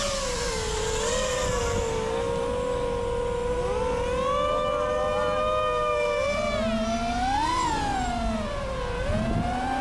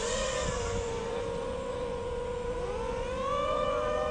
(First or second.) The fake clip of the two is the second